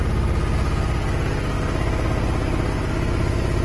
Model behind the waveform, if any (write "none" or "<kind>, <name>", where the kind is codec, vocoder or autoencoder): none